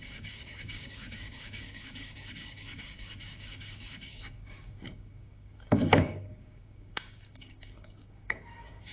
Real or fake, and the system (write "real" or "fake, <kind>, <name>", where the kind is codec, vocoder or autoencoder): fake, codec, DAC